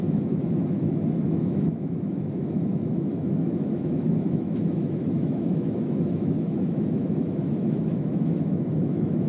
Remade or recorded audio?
remade